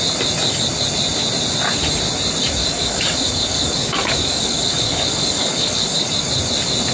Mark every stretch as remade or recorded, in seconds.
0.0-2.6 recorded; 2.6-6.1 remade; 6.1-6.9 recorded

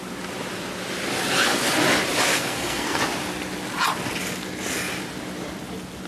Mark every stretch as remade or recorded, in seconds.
0.0-2.3 recorded; 2.3-3.0 remade; 3.0-6.1 recorded

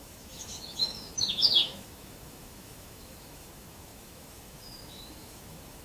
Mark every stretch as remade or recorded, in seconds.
0.0-5.8 remade

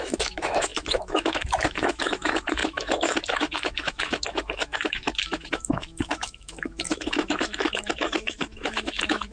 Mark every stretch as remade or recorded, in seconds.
0.0-9.3 remade

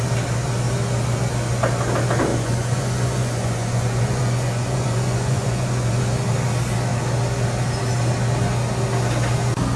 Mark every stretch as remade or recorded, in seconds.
0.0-2.3 recorded; 2.3-6.0 remade; 6.0-9.8 recorded

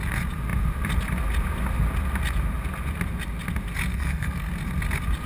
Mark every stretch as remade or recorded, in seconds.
0.0-3.9 recorded; 3.9-4.5 remade; 4.5-5.3 recorded